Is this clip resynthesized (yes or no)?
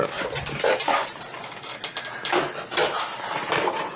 no